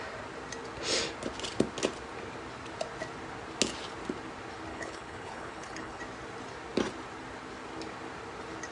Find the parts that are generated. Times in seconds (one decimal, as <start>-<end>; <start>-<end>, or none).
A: 4.7-6.0